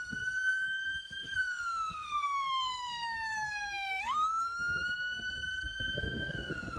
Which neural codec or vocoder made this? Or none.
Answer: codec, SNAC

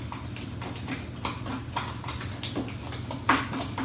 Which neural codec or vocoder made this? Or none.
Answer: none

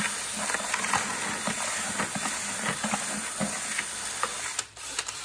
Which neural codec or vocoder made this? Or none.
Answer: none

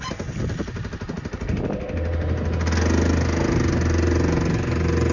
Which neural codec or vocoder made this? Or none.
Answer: none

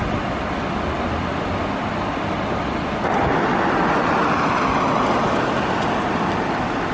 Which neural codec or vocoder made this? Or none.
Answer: none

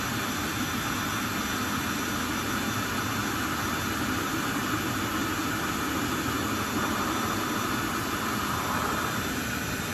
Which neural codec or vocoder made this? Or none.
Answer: none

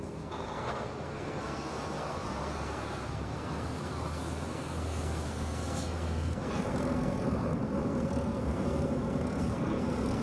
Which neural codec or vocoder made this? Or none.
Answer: codec, SNAC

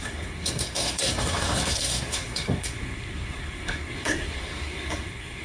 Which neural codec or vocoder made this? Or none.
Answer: codec, SNAC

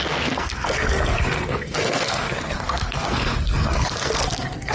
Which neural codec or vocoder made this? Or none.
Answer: codec, SNAC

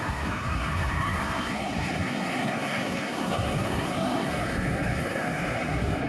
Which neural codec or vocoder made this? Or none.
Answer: codec, SNAC